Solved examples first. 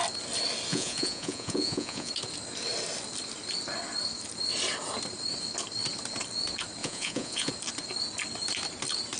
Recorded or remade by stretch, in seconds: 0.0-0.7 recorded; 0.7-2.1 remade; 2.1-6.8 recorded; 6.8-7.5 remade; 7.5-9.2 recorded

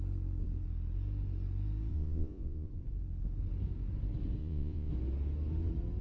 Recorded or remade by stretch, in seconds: 0.0-1.9 recorded; 1.9-2.7 remade; 2.7-4.4 recorded; 4.4-4.9 remade; 4.9-6.0 recorded

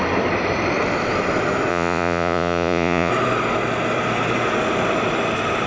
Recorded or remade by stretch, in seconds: 0.0-1.7 recorded; 1.7-3.1 remade; 3.1-5.7 recorded

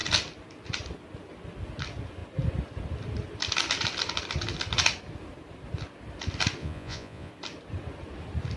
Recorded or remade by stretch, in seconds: 0.0-6.6 recorded; 6.6-7.3 remade; 7.3-8.6 recorded